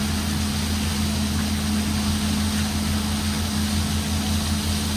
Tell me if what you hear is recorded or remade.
recorded